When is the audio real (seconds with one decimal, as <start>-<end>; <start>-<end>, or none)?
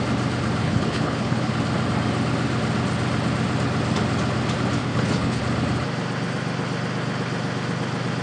0.0-0.6; 1.5-4.8; 5.4-8.2